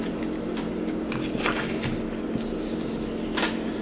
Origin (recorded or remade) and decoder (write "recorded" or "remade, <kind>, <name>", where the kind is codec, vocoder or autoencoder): recorded